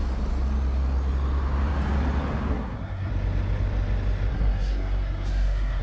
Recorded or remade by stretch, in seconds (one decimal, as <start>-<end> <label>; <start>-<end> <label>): 0.0-2.5 recorded; 2.5-3.1 remade; 3.1-4.3 recorded; 4.3-5.8 remade